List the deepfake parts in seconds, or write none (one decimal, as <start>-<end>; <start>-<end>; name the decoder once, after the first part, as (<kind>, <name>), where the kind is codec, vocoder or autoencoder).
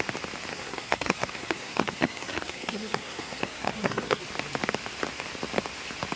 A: 0.5-4.2 (codec, SNAC)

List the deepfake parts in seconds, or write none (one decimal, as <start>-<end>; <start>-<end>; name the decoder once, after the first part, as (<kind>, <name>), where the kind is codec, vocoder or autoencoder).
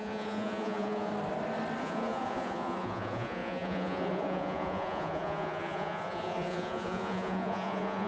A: 0.0-1.1 (vocoder, Vocos); 1.8-8.1